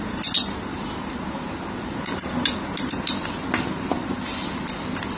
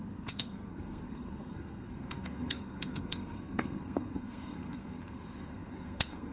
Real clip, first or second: first